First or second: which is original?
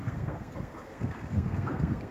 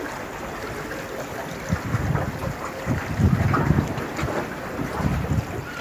second